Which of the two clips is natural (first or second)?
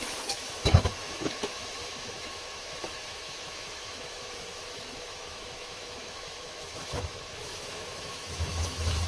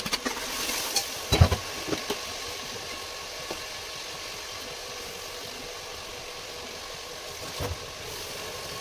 second